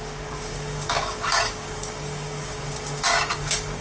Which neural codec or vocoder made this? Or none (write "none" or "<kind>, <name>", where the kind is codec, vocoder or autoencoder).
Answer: codec, DAC